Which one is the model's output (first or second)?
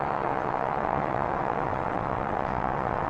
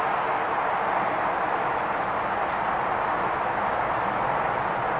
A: first